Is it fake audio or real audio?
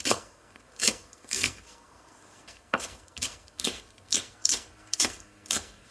fake